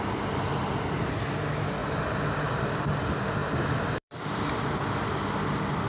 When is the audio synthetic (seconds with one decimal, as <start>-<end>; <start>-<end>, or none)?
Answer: 3.4-4.6